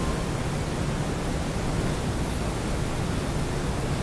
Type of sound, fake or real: real